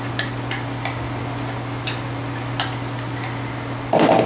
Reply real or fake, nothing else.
real